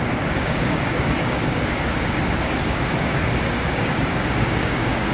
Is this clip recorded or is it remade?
remade